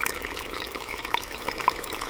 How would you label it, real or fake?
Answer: fake